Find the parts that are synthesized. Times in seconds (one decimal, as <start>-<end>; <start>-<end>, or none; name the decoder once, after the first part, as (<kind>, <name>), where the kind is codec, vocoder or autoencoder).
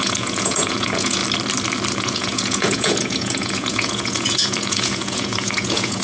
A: 0.0-1.2 (vocoder, Vocos); 1.9-6.0